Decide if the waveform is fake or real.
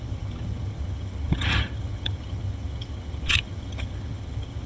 fake